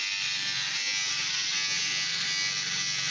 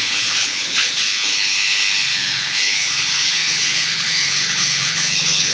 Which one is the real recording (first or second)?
first